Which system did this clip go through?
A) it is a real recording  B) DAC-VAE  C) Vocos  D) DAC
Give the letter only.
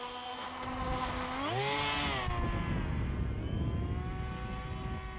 A